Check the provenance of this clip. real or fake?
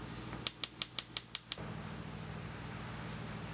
real